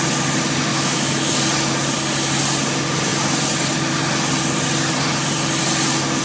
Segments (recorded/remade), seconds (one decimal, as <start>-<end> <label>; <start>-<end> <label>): 0.0-0.7 recorded; 0.7-1.3 remade; 1.3-6.2 recorded